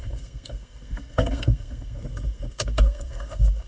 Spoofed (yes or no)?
yes